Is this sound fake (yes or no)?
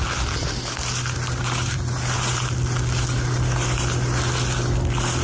no